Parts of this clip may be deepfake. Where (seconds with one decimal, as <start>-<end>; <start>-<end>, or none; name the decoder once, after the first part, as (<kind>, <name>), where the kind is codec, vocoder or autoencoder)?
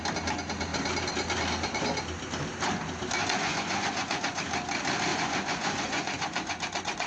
3.2-4.4 (vocoder, Vocos); 5.1-7.1